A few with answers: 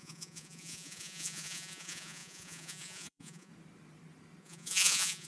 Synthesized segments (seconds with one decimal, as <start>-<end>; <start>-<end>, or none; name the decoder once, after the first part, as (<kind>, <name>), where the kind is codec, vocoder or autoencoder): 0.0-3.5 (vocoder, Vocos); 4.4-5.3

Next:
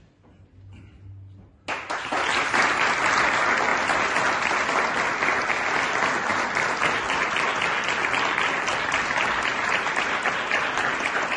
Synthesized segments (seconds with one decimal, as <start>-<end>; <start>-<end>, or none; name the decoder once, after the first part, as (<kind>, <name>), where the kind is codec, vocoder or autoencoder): 9.5-11.4 (vocoder, BigVGAN v2)

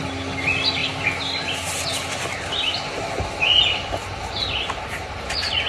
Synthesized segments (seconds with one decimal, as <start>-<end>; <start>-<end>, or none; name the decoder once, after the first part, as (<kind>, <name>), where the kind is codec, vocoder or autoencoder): none

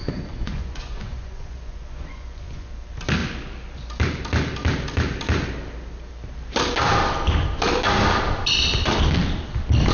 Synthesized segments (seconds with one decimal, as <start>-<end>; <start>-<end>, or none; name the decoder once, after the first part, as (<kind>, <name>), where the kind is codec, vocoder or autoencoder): 0.0-2.7 (vocoder, Vocos)

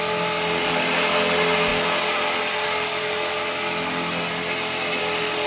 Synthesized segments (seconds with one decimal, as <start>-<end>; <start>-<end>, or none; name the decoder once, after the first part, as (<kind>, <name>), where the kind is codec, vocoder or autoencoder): none

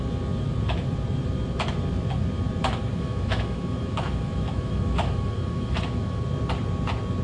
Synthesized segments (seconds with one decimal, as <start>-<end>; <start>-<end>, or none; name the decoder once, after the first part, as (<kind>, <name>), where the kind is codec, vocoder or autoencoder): 2.9-6.2 (autoencoder, DAC-VAE)